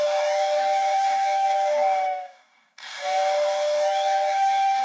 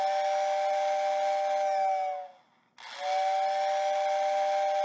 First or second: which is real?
second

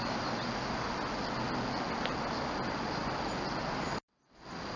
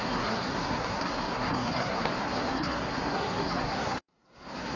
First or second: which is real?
first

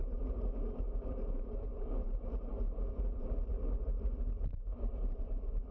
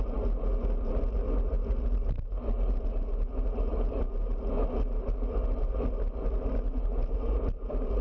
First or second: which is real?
second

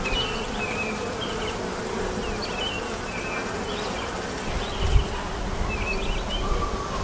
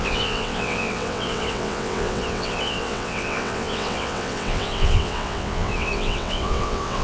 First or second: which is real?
first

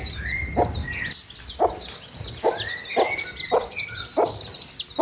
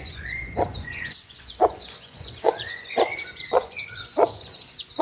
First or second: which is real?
first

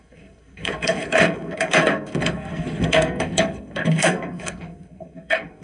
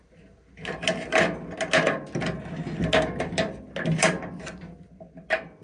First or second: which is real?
second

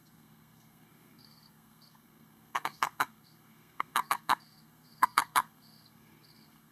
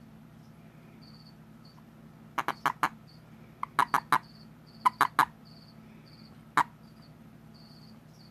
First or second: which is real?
second